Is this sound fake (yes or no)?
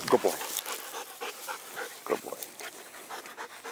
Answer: no